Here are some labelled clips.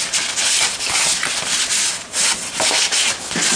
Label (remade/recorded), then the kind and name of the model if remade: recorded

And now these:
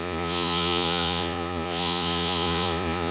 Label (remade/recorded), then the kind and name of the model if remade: remade, vocoder, Vocos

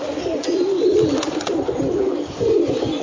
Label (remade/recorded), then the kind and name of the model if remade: recorded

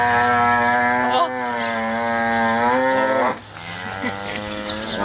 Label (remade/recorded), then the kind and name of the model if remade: recorded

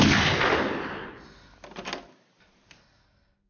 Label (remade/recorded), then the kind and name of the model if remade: recorded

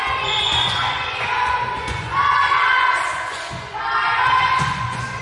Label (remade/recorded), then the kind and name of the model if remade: remade, vocoder, Vocos